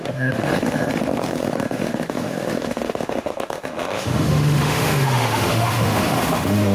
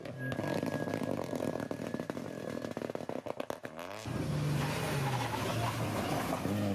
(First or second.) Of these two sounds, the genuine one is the second